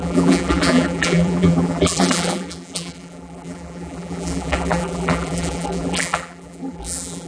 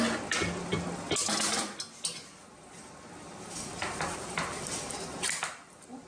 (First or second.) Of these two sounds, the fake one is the first